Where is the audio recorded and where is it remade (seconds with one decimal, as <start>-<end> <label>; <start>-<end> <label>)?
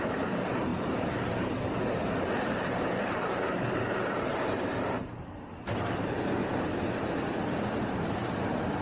0.0-6.4 remade; 6.4-7.9 recorded; 7.9-8.8 remade